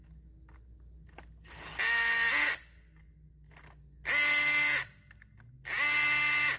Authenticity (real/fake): real